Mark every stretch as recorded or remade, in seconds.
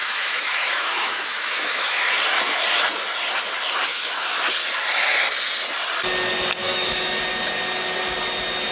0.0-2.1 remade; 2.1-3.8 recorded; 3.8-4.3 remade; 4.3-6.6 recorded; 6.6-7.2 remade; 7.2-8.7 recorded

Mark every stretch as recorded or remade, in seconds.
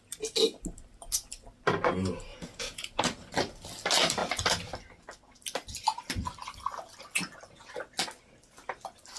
0.0-2.3 recorded; 2.3-3.0 remade; 3.0-9.2 recorded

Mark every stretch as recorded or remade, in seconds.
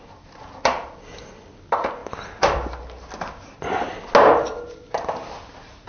0.0-5.9 recorded